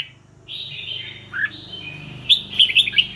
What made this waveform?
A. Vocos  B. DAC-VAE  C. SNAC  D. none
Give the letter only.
D